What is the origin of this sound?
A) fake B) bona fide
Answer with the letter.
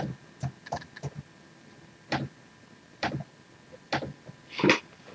B